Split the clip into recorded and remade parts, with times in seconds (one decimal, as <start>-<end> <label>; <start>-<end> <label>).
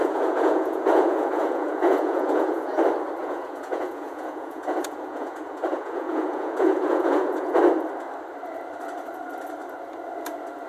0.0-2.8 remade; 2.8-3.2 recorded; 3.2-7.6 remade; 7.6-10.7 recorded